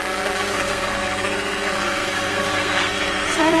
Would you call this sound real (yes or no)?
no